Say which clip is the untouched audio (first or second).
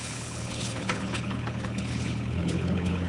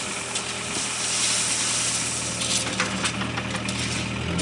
second